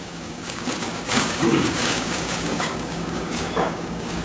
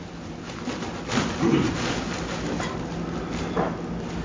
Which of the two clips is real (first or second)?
second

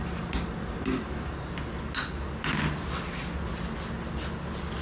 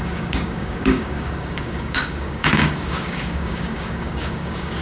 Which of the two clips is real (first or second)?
first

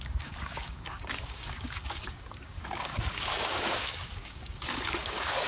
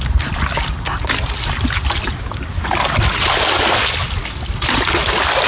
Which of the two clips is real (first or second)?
second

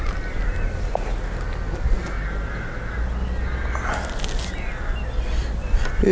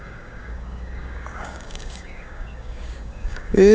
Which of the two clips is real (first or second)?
first